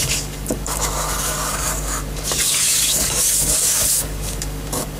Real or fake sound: fake